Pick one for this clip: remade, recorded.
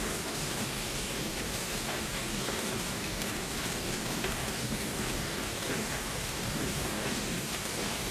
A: remade